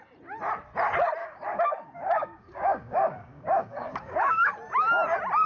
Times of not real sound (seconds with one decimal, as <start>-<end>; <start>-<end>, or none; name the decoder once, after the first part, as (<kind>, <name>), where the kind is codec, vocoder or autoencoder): 1.2-4.5 (codec, DAC)